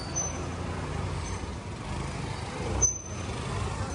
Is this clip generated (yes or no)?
no